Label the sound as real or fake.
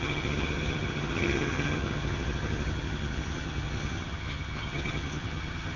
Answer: fake